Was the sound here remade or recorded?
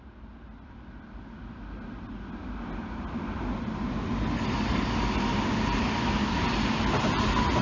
recorded